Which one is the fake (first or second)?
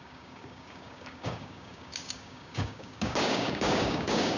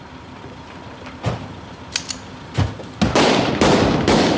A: first